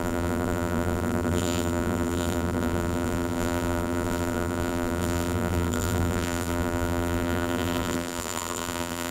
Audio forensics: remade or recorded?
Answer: remade